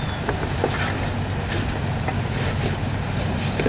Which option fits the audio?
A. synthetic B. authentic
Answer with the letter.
B